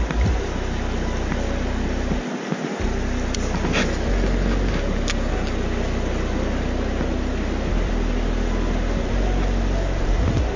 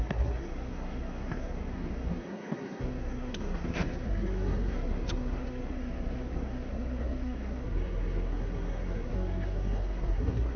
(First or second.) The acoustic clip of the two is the first